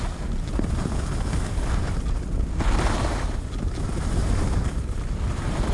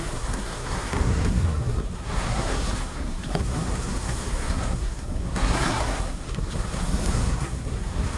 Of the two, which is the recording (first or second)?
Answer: first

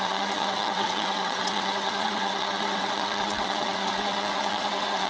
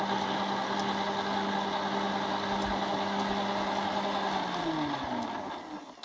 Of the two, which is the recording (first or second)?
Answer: second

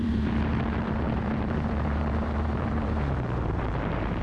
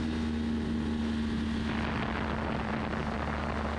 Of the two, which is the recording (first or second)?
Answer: second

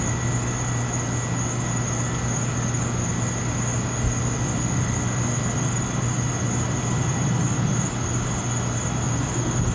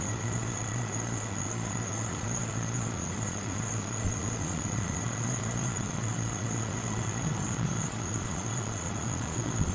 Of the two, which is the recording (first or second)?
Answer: first